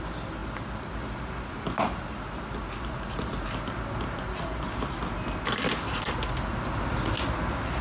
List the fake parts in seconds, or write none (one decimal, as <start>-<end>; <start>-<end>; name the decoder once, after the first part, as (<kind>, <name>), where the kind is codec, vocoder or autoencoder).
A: none